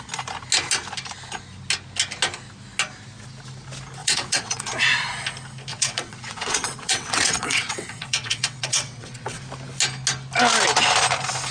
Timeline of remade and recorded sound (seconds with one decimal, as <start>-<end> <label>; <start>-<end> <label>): 0.0-4.0 recorded; 4.0-4.7 remade; 4.7-5.7 recorded; 5.7-9.4 remade; 9.4-11.5 recorded